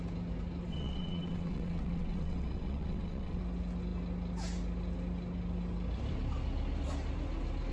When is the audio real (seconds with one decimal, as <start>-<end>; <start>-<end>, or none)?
0.0-0.7; 3.4-7.7